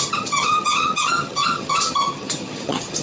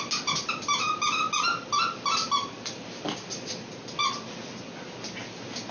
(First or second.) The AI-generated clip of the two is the first